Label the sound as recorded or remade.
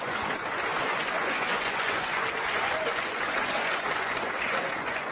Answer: remade